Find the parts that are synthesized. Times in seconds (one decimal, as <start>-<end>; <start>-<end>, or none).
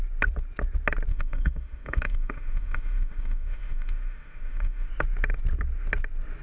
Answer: 1.1-4.9